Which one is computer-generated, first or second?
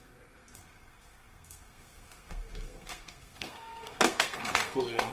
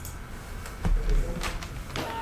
first